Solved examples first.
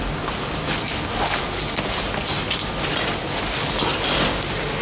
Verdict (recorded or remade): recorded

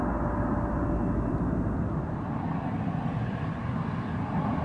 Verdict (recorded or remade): recorded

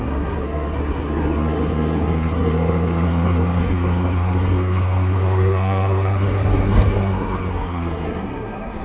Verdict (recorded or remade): remade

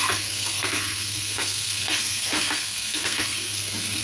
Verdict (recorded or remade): remade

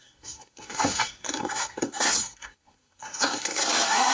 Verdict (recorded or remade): remade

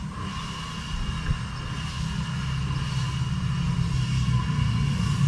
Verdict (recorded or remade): recorded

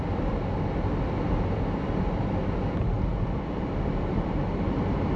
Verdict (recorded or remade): recorded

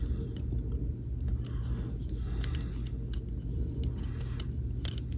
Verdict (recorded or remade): recorded